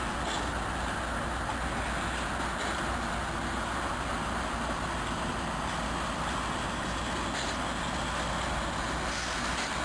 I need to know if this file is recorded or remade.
recorded